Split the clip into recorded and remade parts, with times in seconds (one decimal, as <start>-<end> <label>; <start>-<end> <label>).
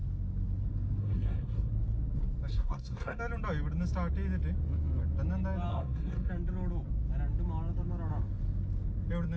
0.0-1.0 recorded; 1.0-1.7 remade; 1.7-2.5 recorded; 2.5-3.2 remade; 3.2-5.7 recorded; 5.7-6.3 remade; 6.3-9.4 recorded